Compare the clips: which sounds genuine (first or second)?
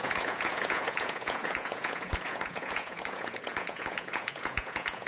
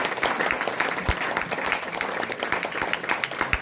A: second